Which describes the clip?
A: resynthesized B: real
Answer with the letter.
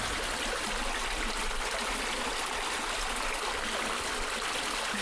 B